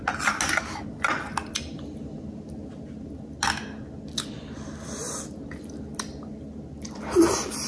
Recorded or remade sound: recorded